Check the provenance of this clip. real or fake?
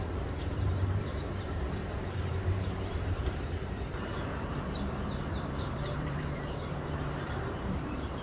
fake